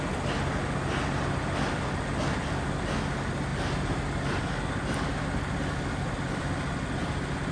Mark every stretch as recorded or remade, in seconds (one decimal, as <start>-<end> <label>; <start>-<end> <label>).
0.0-7.5 recorded